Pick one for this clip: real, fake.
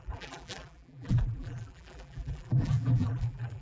fake